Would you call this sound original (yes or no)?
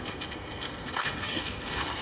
no